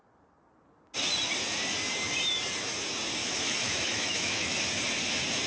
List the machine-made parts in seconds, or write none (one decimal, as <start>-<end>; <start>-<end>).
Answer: 3.2-4.6